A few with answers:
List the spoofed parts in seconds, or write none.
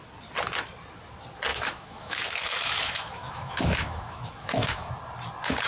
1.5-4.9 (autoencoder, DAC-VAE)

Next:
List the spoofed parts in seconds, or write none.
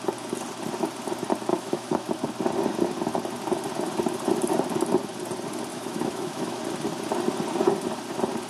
1.5-2.1 (autoencoder, DAC-VAE); 5.7-6.6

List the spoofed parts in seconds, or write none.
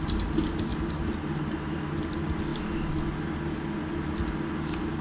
none